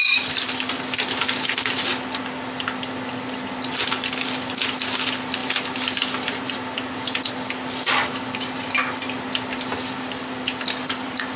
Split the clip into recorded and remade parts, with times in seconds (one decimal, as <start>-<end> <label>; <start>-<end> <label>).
0.0-11.4 recorded